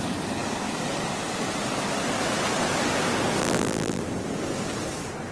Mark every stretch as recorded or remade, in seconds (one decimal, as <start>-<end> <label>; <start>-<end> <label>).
0.0-3.4 recorded; 3.4-4.0 remade; 4.0-5.3 recorded